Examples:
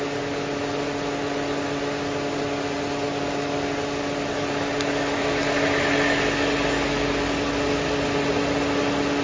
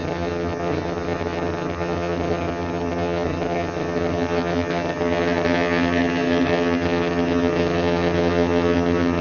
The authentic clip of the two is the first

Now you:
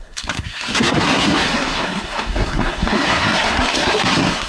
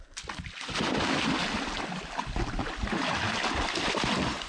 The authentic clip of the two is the second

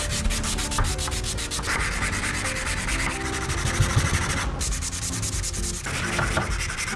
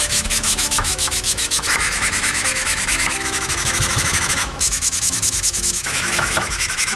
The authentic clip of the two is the first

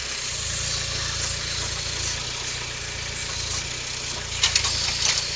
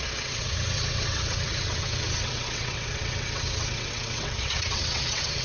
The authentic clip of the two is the first